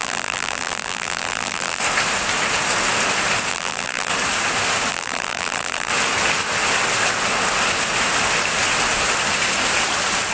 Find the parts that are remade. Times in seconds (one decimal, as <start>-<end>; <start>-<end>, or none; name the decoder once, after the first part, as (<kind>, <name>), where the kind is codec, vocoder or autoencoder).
0.0-1.8 (vocoder, BigVGAN v2); 3.5-4.1; 4.9-5.9